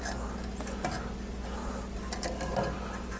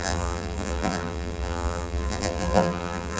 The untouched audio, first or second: first